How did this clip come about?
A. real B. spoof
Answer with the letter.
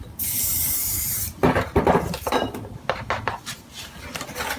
A